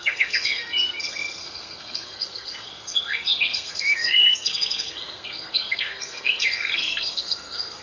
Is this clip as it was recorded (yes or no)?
no